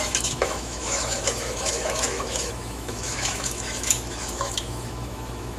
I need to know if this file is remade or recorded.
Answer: remade